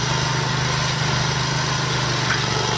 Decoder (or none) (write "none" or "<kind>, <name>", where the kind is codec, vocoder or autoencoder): none